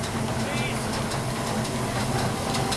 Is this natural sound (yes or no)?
yes